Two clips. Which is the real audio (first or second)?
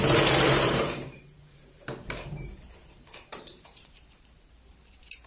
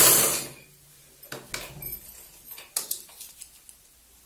second